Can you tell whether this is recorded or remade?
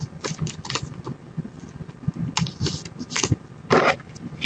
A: recorded